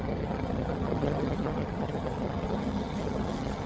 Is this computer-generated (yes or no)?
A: yes